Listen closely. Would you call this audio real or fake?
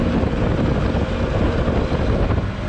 real